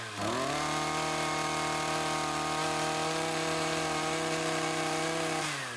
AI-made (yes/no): no